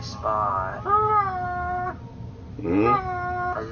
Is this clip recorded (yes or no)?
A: yes